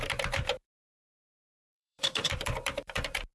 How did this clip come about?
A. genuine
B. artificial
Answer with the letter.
B